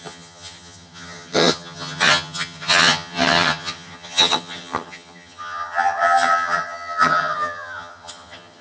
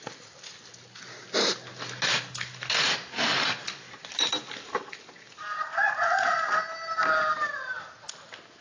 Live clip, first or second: second